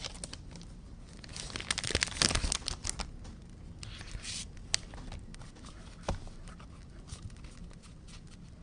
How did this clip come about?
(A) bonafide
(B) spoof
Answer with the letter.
A